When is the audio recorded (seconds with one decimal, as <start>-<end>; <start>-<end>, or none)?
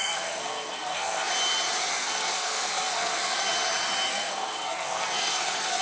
1.3-1.9; 3.5-4.1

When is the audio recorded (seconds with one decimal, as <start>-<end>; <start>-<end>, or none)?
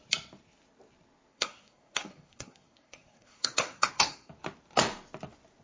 0.0-1.3; 4.3-5.6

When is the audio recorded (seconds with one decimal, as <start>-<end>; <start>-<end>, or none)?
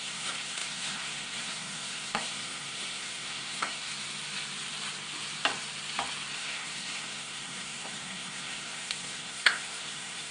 3.9-6.3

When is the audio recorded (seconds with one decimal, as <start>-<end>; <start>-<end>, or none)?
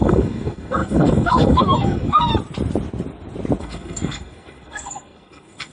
2.3-3.6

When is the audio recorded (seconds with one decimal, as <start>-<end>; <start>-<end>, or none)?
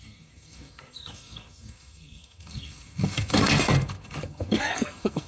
none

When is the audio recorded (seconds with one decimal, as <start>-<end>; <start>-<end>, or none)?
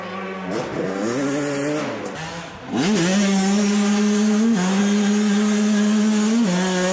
0.0-6.9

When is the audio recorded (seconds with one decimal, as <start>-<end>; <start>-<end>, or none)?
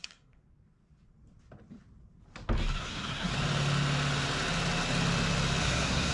0.4-2.8; 3.3-5.6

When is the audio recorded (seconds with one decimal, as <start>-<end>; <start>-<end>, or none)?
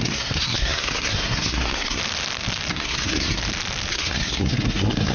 2.0-2.7; 3.4-3.9